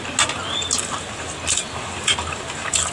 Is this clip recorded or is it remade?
recorded